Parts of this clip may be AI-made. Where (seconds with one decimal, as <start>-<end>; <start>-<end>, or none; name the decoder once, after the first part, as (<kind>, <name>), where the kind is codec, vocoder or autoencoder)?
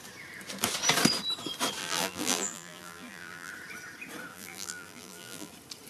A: 1.8-3.5 (vocoder, BigVGAN v2); 4.3-5.5